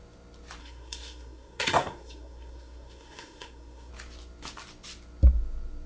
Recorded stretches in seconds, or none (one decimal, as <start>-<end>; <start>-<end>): 0.0-0.6; 3.9-5.9